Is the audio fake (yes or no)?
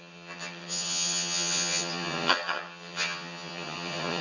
yes